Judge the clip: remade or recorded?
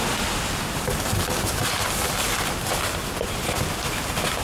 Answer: recorded